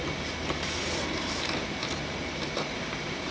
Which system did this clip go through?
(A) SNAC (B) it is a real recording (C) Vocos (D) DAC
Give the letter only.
B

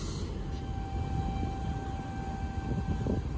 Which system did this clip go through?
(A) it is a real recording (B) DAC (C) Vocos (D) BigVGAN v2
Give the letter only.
A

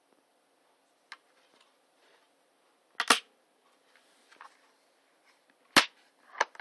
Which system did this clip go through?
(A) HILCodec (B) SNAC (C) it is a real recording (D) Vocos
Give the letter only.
C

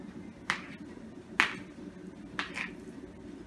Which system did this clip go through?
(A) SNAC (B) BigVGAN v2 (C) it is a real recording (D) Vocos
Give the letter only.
C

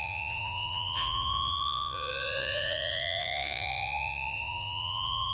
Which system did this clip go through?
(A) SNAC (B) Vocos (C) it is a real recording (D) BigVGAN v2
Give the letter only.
B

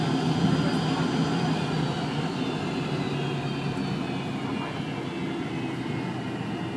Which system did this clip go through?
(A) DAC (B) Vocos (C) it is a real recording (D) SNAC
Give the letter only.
C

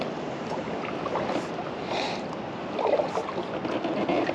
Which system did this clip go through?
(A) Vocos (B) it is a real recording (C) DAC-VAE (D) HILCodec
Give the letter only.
B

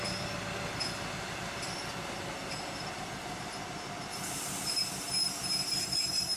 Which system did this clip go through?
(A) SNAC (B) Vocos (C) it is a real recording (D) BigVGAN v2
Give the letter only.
C